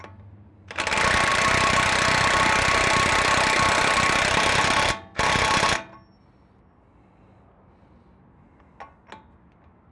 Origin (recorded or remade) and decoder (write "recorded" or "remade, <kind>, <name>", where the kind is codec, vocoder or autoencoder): recorded